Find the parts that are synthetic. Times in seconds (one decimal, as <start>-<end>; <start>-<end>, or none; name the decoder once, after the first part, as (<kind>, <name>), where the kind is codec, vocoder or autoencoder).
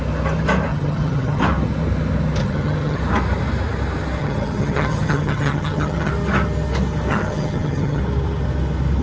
0.7-1.4 (vocoder, HiFi-GAN); 2.4-3.0; 4.2-6.1; 7.1-8.0